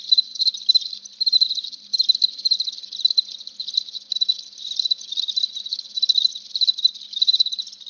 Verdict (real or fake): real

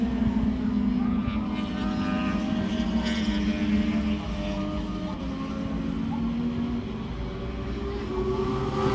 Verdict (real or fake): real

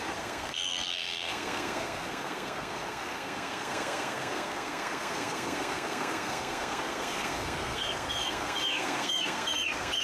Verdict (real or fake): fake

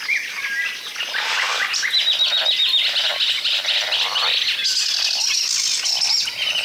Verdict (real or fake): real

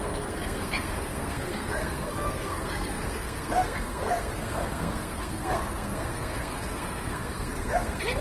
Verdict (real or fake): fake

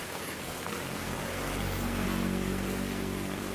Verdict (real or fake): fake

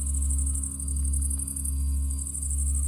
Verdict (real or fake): real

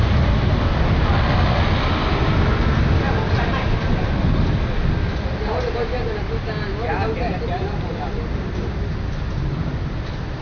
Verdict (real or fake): real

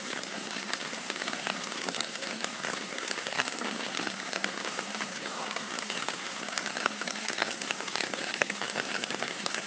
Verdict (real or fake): fake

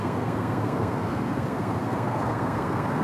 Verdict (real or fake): fake